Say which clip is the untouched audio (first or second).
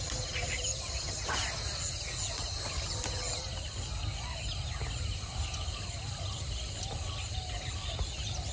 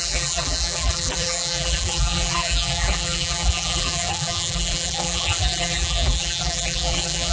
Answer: first